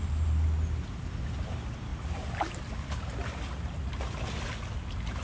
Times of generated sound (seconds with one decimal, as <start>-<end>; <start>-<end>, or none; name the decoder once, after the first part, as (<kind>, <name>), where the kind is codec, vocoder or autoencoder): none